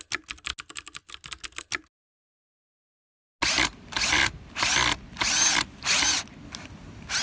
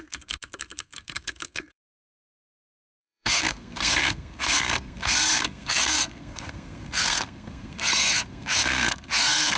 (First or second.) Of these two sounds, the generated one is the second